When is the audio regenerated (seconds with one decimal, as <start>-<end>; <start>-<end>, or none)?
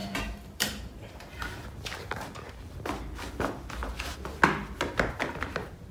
0.0-1.5